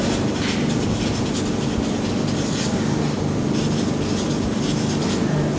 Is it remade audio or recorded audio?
recorded